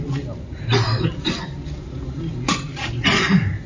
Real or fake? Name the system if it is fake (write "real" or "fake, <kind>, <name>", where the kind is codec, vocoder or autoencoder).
real